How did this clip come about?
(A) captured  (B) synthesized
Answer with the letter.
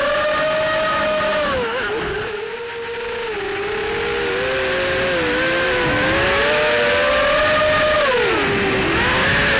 A